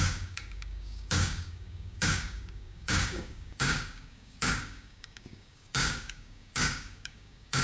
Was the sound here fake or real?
fake